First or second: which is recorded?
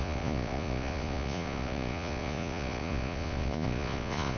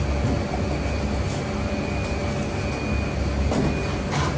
second